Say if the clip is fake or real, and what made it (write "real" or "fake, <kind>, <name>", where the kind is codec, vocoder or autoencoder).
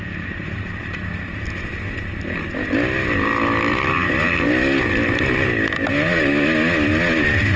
real